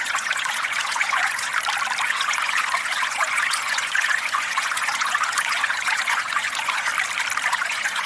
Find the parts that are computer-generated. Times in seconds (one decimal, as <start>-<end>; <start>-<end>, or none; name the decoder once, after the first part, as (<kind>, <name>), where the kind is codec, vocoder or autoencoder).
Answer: 0.0-1.5 (vocoder, Vocos); 2.0-6.9; 7.5-8.1